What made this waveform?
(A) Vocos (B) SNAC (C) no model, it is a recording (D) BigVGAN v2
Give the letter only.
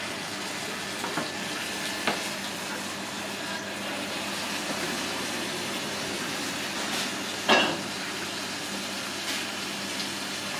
C